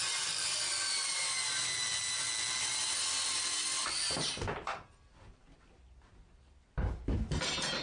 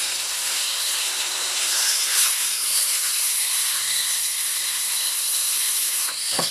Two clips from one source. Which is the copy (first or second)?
second